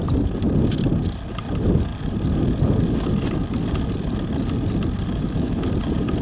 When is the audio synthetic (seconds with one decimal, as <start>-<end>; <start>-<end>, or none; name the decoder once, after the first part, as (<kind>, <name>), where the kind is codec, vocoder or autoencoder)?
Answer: 5.1-5.7 (autoencoder, DAC-VAE)